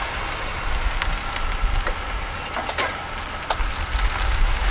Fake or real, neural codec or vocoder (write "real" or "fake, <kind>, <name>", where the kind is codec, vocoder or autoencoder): real